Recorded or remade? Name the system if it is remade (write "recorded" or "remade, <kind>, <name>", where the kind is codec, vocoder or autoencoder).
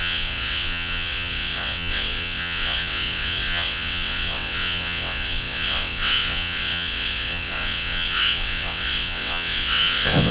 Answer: remade, vocoder, WaveNeXt